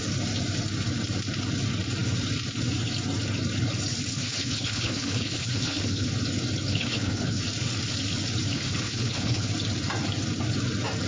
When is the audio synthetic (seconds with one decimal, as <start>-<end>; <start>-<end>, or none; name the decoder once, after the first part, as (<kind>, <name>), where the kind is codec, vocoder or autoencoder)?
4.1-6.1 (codec, HILCodec); 6.7-7.4; 8.5-9.5